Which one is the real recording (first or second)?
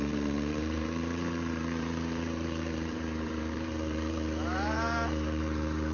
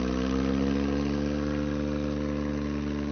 second